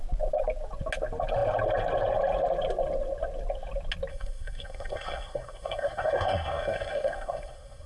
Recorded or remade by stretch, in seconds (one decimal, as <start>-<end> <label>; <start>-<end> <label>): 0.0-4.1 recorded; 4.1-7.9 remade